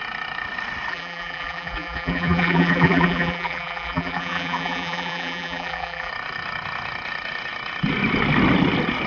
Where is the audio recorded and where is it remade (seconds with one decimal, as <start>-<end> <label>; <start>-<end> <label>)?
0.0-0.9 recorded; 0.9-6.1 remade; 6.1-9.1 recorded